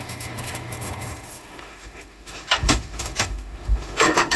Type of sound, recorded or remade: remade